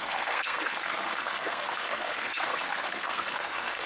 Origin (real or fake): fake